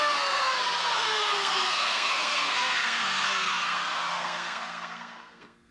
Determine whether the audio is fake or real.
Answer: fake